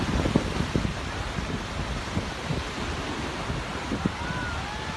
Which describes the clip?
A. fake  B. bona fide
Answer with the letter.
B